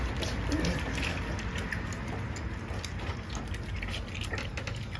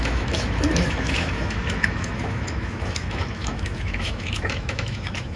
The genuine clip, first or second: first